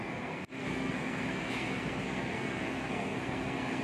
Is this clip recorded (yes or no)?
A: no